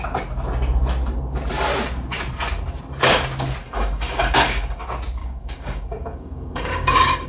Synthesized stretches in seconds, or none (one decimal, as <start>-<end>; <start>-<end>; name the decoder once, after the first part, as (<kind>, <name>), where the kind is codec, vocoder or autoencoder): 3.6-4.8 (codec, DAC); 5.2-7.3